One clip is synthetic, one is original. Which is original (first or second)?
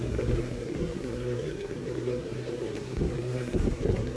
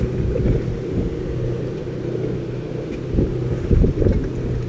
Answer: second